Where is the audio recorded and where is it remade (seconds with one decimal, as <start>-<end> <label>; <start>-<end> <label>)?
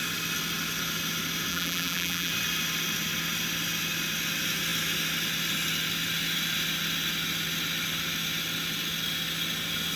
0.0-1.5 recorded; 1.5-2.3 remade; 2.3-10.0 recorded